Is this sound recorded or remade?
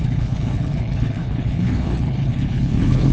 remade